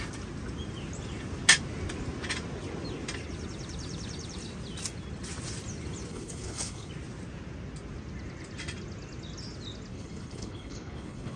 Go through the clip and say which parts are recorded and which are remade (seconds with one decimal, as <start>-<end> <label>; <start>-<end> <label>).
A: 0.0-6.1 recorded; 6.1-6.9 remade; 6.9-9.9 recorded; 9.9-11.4 remade